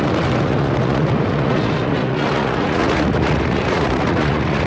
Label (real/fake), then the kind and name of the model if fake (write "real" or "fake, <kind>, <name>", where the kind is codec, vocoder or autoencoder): fake, vocoder, Vocos